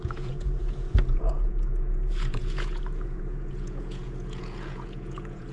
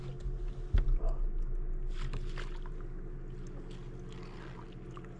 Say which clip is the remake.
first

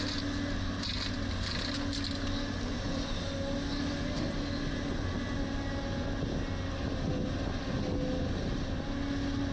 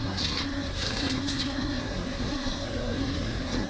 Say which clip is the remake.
second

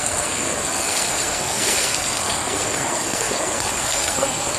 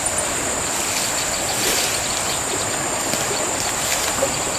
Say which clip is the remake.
first